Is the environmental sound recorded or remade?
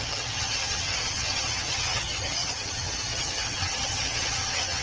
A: remade